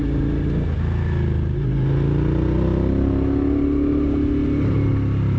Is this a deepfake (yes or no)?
no